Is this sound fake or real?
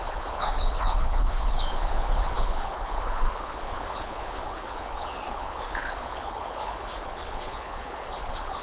fake